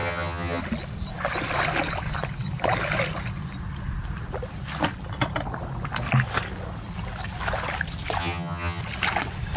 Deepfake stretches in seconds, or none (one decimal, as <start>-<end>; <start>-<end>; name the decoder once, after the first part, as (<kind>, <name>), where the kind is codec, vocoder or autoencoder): 0.0-0.6 (vocoder, HiFi-GAN); 8.2-8.8